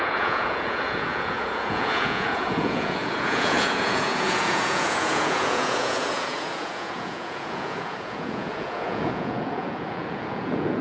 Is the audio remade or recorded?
remade